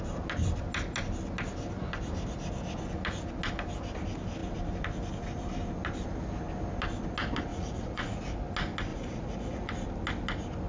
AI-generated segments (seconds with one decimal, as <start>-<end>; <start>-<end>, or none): 7.5-8.3; 8.9-9.7